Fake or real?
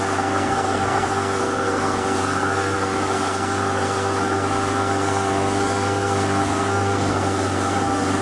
fake